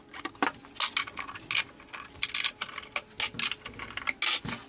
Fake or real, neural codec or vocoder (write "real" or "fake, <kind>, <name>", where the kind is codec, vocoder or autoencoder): real